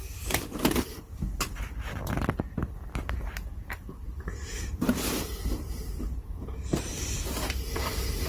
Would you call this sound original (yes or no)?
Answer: no